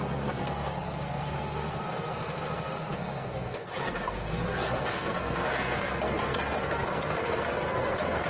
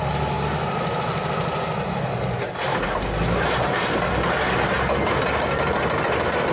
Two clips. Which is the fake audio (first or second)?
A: first